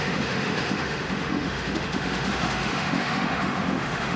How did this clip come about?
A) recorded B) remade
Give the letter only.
B